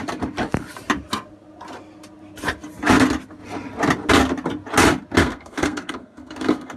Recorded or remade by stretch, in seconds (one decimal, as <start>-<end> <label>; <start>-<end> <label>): 0.0-5.2 recorded; 5.2-6.8 remade